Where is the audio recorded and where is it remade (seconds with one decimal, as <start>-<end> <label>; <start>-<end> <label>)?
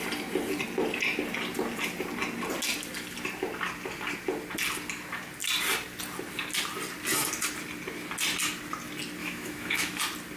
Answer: 0.0-9.2 recorded; 9.2-10.0 remade; 10.0-10.4 recorded